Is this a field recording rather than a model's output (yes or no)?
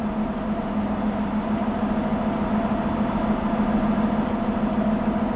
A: yes